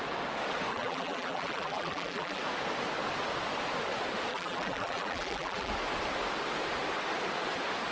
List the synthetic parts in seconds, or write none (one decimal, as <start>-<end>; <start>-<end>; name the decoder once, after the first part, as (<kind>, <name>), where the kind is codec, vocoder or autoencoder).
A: 0.7-2.4 (vocoder, BigVGAN v2); 4.3-5.7